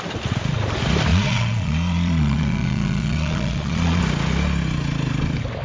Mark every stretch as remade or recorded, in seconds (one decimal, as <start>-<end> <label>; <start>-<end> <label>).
0.0-1.1 recorded; 1.1-4.0 remade; 4.0-5.6 recorded